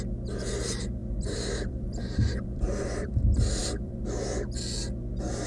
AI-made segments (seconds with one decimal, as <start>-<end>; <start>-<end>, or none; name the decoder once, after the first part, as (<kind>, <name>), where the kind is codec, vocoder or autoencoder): 1.0-3.2 (vocoder, BigVGAN v2); 3.6-4.1